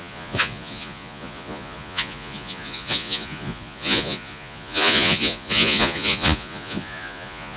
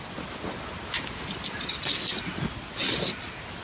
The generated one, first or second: first